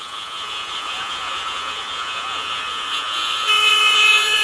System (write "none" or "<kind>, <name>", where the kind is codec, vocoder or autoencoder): vocoder, Vocos